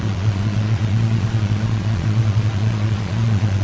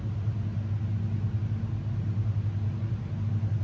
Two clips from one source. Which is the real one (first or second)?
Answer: second